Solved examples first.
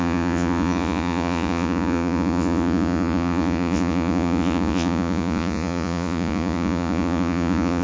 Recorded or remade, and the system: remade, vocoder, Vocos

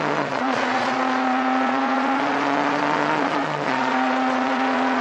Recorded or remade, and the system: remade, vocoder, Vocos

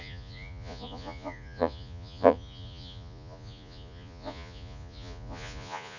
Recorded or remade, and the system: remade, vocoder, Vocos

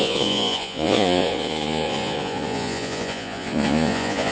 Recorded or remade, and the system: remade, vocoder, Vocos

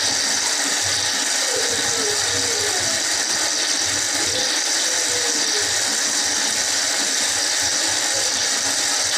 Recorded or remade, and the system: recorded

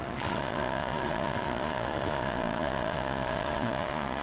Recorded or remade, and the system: remade, vocoder, Vocos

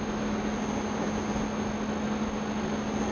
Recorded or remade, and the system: recorded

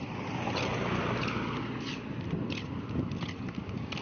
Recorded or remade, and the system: recorded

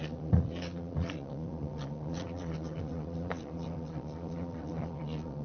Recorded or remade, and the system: remade, vocoder, Vocos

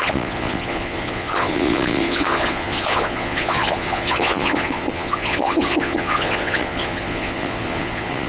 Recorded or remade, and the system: remade, vocoder, Vocos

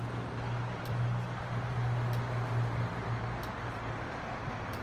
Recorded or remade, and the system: recorded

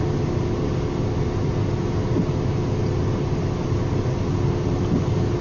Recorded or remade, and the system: recorded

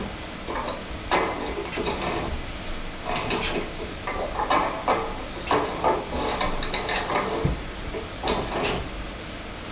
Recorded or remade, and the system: recorded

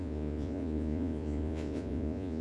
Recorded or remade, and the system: remade, vocoder, Vocos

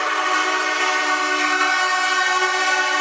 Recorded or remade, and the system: recorded